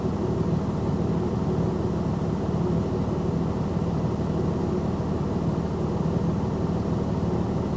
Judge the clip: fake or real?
real